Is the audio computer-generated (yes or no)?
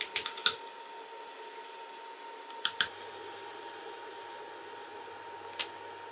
no